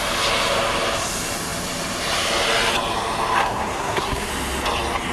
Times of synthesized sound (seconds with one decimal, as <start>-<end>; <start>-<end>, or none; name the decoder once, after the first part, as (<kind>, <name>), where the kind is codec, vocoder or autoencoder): 3.4-4.3 (codec, SNAC)